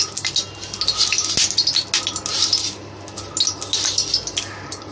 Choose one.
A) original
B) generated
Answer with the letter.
A